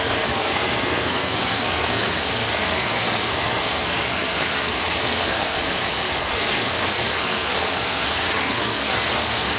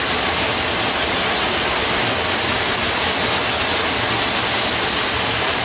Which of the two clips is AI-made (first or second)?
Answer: first